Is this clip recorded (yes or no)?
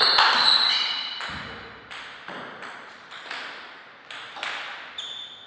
yes